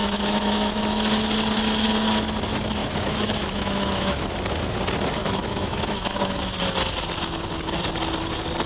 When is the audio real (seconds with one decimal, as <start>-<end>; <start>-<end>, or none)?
0.8-2.8; 4.2-5.2; 6.4-8.7